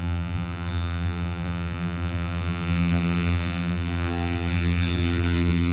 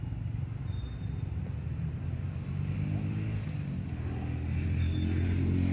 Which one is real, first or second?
second